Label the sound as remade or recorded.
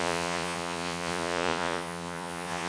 remade